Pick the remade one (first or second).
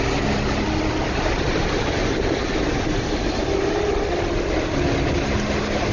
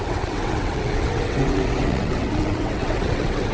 second